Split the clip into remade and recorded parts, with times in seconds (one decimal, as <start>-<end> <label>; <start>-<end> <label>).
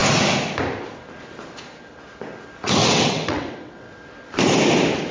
0.0-2.8 recorded; 2.8-3.9 remade; 3.9-5.1 recorded